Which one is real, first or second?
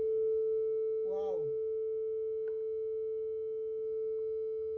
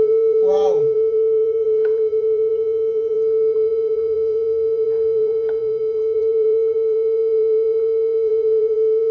first